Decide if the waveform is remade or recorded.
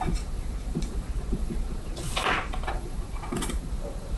remade